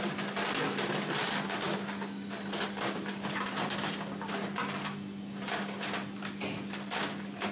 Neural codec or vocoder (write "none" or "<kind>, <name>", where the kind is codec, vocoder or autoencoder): none